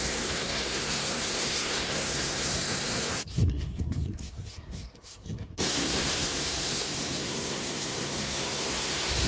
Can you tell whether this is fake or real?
fake